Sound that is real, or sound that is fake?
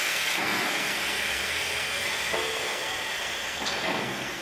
fake